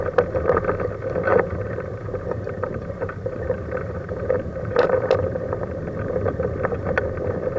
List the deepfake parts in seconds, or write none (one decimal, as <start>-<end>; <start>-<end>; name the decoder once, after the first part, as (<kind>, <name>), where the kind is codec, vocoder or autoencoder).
1.3-5.8 (vocoder, BigVGAN v2)